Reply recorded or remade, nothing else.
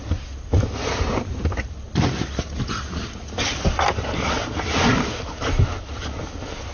recorded